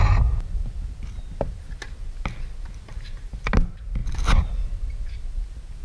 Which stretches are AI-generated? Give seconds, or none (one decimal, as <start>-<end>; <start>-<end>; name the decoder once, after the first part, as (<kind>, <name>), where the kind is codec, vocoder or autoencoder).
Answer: none